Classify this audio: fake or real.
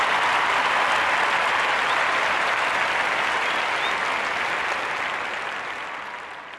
real